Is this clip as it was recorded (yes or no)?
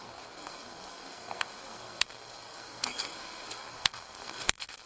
no